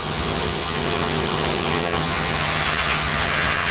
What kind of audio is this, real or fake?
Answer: fake